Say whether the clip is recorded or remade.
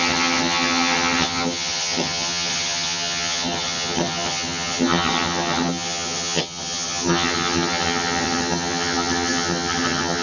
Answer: remade